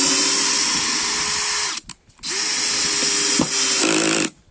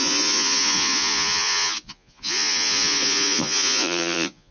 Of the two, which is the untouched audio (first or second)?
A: first